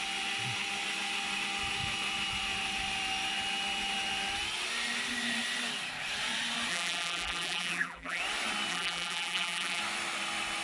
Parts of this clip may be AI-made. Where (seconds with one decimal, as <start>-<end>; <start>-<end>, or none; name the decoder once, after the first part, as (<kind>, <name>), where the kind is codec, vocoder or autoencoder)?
6.7-8.2 (vocoder, BigVGAN v2); 8.7-9.8